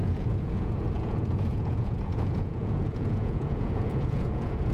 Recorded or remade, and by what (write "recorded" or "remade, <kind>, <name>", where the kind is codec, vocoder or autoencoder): remade, vocoder, Vocos